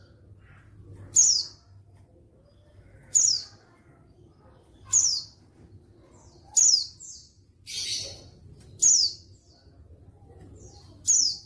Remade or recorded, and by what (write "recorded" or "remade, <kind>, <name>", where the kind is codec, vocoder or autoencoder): recorded